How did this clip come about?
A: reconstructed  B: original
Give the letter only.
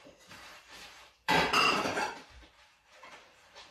A